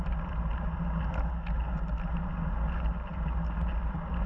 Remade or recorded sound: recorded